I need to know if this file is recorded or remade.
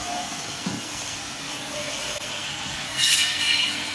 remade